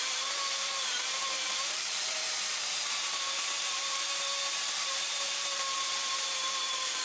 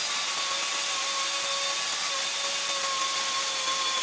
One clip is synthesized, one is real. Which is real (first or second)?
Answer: second